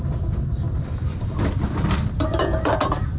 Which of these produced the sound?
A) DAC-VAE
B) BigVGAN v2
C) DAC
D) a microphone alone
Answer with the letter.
B